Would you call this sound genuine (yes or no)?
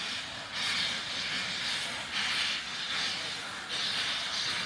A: yes